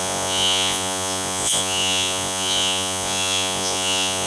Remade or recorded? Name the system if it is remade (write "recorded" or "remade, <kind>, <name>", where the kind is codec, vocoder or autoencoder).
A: remade, vocoder, Vocos